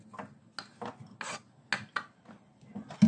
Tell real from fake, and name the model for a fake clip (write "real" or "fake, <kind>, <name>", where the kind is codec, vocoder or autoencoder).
real